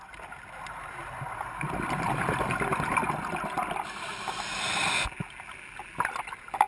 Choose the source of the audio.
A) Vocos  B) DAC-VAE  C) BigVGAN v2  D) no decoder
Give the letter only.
D